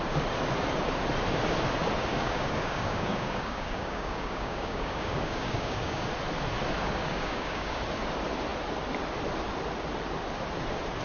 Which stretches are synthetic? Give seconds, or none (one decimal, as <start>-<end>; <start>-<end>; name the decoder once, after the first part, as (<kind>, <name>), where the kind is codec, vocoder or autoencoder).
2.1-6.1 (codec, DAC); 6.8-7.8